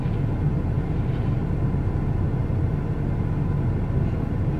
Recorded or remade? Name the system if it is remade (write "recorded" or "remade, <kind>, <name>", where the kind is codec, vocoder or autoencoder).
recorded